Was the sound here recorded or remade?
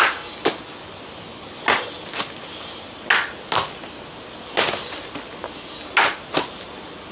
recorded